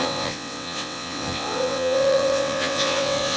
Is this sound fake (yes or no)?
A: yes